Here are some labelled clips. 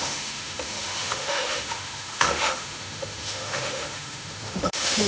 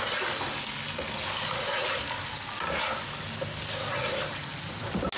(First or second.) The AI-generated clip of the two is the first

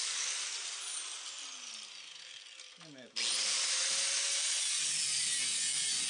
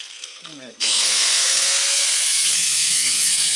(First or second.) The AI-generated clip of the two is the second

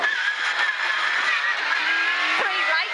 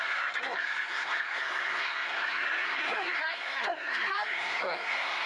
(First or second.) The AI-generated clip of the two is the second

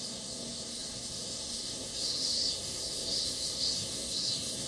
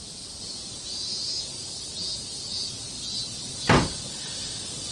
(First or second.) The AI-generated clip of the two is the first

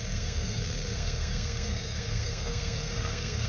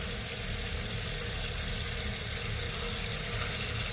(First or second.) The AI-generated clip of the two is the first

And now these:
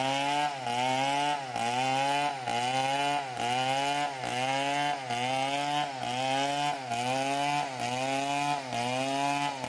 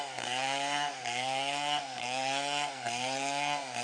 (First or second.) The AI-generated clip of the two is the second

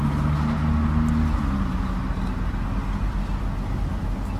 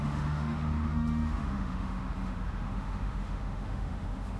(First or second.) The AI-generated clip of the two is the second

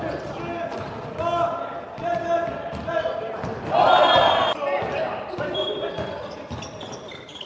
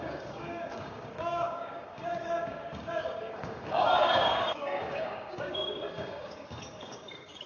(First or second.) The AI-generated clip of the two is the second